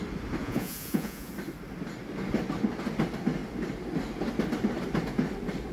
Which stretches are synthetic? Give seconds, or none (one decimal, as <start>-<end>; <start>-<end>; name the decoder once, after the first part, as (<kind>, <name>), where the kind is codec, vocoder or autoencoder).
0.4-1.3 (vocoder, Vocos)